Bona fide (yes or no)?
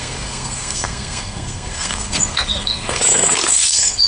no